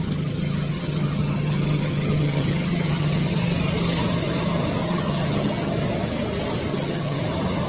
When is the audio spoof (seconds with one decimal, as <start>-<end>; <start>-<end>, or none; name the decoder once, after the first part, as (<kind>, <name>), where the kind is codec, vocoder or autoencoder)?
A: 0.0-3.4 (vocoder, HiFi-GAN); 4.8-5.7; 6.7-7.2